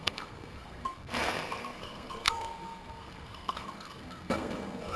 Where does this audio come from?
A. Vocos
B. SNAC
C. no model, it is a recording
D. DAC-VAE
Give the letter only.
B